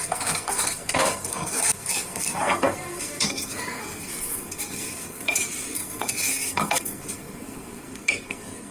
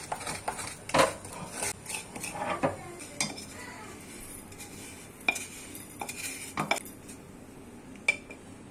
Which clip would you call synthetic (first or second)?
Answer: first